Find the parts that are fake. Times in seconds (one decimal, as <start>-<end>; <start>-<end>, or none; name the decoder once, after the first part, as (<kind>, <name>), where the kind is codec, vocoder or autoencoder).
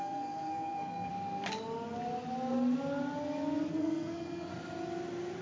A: 0.0-1.1 (codec, SNAC); 3.7-4.5